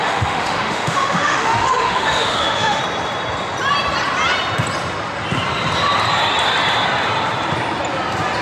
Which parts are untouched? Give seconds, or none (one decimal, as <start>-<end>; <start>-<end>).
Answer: 2.8-8.4